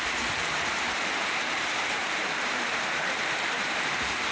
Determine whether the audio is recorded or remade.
remade